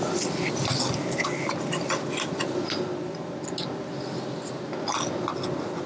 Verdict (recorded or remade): recorded